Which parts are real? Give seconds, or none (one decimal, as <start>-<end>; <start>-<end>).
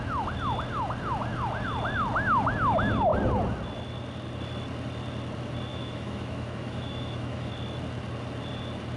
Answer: 0.0-5.7; 7.5-9.0